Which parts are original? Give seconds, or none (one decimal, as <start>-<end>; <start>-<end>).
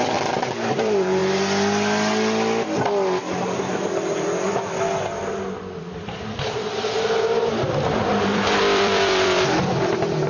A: 1.2-5.8